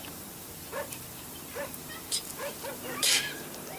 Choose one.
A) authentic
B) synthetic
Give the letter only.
B